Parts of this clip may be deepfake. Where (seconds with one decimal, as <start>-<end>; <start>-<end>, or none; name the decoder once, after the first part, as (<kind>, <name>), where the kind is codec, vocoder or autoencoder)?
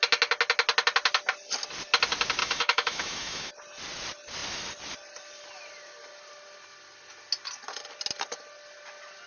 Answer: 2.4-3.5 (autoencoder, DAC-VAE)